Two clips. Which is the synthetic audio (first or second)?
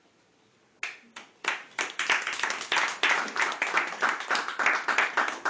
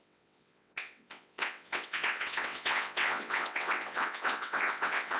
second